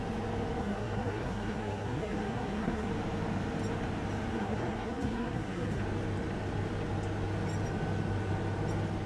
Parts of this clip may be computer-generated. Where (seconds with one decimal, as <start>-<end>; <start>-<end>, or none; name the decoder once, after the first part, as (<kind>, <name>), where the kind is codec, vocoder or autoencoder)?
0.6-2.9 (codec, SNAC); 4.3-5.8